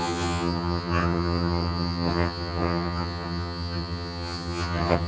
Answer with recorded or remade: remade